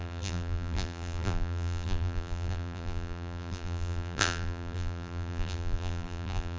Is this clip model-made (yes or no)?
yes